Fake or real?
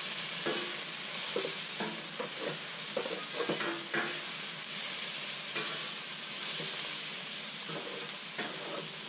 real